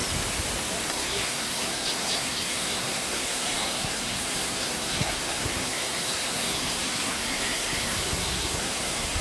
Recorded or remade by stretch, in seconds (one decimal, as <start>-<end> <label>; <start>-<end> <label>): 0.0-0.9 recorded; 0.9-9.2 remade